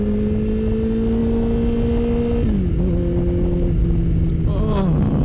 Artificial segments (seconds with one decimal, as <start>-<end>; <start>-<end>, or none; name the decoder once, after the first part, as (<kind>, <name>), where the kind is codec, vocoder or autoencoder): none